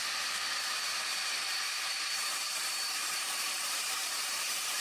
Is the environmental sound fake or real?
fake